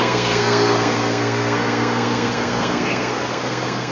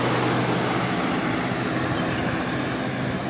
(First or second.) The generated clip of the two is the first